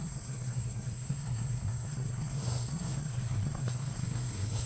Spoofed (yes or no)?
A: yes